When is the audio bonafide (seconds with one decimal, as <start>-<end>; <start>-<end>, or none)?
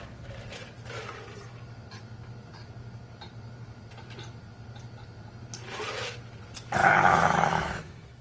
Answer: 0.0-6.8